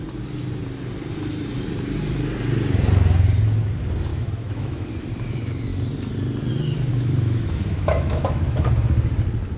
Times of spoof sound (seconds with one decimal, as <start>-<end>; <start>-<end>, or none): 4.1-4.9; 6.9-8.7